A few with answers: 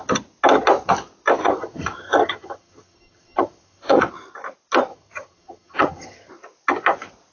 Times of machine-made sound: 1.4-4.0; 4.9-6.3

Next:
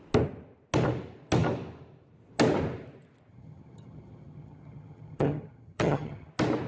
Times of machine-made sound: 3.3-6.3